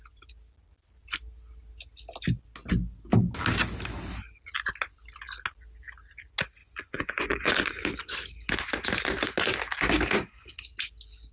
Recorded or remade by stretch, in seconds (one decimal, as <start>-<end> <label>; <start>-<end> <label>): 0.0-6.6 recorded; 6.6-7.7 remade; 7.7-11.3 recorded